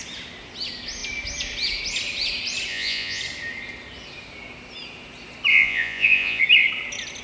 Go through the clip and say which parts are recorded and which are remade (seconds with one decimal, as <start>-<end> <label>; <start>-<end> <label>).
0.0-2.7 recorded; 2.7-3.2 remade; 3.2-5.5 recorded; 5.5-6.4 remade; 6.4-7.2 recorded